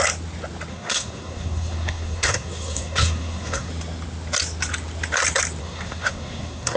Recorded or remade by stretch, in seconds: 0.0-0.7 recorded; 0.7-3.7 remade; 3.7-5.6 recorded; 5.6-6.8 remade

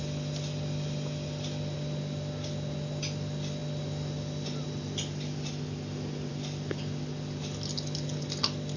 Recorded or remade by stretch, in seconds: 0.0-8.8 recorded

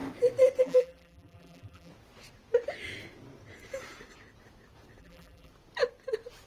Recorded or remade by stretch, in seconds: 0.0-0.6 recorded; 0.6-1.9 remade; 1.9-5.0 recorded; 5.0-5.5 remade; 5.5-6.5 recorded